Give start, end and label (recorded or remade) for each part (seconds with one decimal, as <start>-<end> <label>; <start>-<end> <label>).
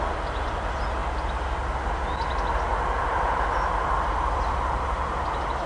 0.0-5.7 recorded